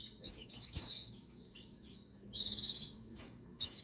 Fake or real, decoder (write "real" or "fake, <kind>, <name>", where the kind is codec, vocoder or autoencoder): fake, codec, DAC